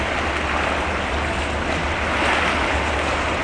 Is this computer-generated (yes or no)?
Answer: no